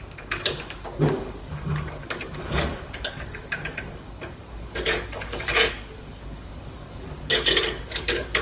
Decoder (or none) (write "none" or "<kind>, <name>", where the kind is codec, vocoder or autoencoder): codec, DAC